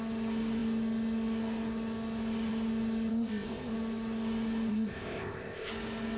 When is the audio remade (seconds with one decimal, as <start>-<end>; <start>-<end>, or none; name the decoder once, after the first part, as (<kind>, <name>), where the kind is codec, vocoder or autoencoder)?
3.1-3.7 (codec, ZipCodec); 4.7-5.7